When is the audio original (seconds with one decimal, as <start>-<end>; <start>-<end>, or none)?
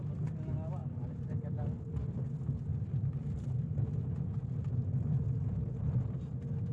0.0-0.8; 1.4-2.7; 5.8-6.7